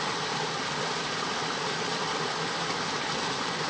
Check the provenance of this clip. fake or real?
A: real